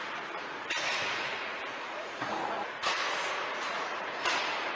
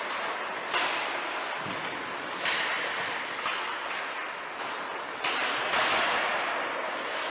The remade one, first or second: first